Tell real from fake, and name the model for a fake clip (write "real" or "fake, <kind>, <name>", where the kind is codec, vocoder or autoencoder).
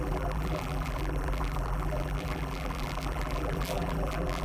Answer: fake, vocoder, BigVGAN v2